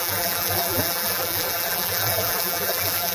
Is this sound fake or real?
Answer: fake